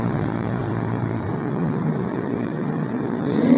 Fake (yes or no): yes